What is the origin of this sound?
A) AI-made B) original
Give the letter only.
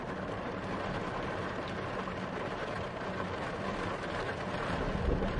A